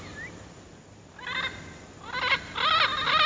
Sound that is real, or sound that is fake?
real